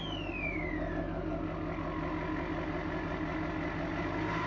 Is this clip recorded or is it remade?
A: recorded